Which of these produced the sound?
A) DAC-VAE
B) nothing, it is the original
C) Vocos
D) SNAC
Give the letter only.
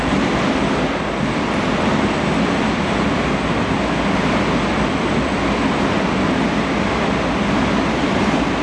B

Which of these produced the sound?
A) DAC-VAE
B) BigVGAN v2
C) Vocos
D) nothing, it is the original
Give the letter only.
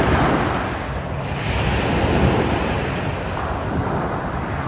D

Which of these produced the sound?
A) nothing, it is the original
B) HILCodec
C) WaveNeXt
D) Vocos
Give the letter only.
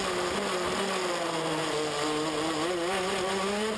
A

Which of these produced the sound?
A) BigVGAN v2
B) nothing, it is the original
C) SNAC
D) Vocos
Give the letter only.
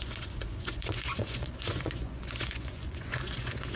D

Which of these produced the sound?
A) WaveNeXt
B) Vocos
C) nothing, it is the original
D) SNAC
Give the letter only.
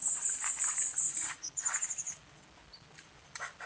C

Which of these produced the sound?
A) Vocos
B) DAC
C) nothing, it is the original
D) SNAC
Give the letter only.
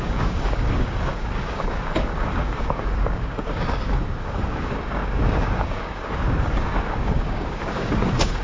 B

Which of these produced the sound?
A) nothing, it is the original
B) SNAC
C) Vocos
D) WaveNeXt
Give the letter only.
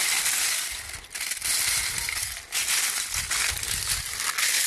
A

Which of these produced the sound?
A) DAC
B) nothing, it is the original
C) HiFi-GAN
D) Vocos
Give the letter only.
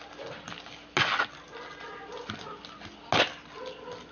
B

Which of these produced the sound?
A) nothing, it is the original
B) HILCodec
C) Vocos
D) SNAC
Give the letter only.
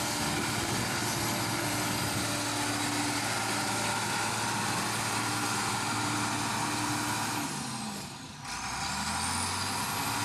A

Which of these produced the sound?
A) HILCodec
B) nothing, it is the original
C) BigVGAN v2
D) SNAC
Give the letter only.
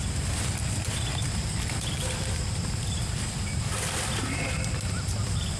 C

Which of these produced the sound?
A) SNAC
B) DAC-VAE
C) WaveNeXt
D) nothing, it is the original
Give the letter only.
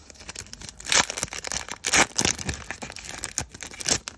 D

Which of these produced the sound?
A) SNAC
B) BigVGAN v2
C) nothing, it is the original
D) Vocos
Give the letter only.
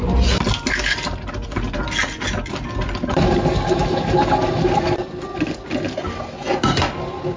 C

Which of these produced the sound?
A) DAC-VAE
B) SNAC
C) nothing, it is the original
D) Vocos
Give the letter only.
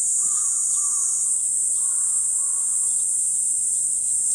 C